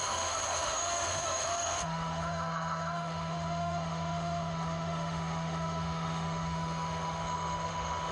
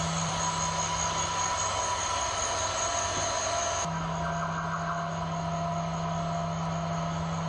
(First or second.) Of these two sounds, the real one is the second